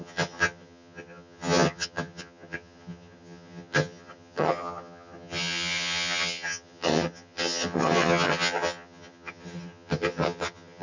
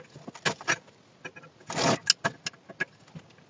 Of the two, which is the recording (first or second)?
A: second